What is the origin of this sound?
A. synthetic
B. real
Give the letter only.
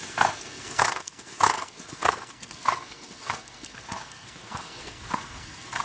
A